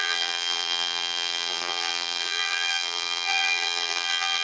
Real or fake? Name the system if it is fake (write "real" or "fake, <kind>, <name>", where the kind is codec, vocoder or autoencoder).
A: fake, vocoder, BigVGAN v2